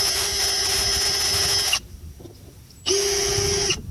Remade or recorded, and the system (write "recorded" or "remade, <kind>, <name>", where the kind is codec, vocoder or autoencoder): recorded